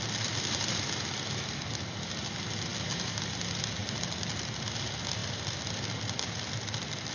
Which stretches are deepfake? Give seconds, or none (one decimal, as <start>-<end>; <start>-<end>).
none